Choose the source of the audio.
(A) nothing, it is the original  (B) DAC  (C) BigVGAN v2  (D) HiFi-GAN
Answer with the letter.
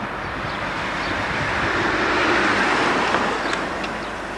A